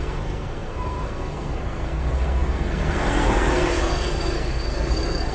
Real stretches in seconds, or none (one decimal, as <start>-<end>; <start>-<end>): none